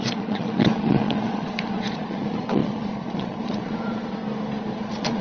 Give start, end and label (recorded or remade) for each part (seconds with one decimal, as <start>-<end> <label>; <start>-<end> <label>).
0.0-4.2 remade; 4.2-4.7 recorded; 4.7-5.2 remade